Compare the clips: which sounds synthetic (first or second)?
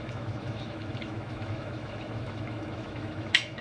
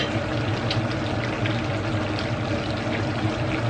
first